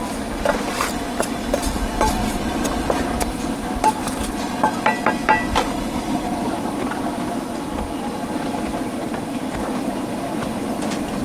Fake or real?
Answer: real